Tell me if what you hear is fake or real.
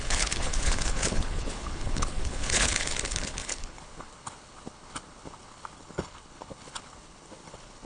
fake